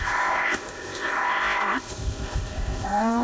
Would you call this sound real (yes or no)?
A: no